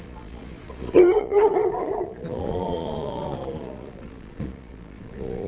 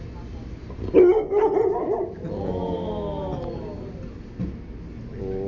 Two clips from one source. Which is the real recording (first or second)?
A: second